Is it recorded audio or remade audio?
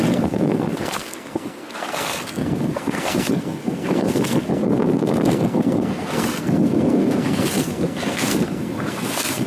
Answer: remade